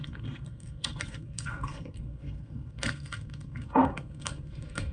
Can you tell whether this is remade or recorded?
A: remade